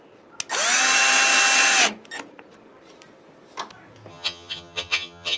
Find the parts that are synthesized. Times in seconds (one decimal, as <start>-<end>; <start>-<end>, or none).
4.1-5.4